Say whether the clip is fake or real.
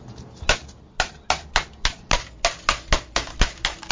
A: real